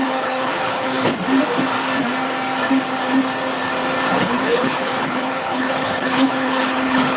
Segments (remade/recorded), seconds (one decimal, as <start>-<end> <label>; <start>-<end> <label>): 0.0-1.1 remade; 1.1-4.1 recorded; 4.1-7.2 remade